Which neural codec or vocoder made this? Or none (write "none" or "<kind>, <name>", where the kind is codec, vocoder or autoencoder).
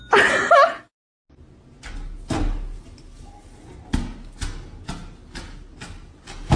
none